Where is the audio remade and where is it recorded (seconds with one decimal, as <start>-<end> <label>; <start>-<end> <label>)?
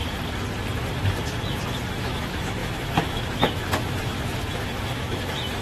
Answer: 0.0-2.0 recorded; 2.0-5.6 remade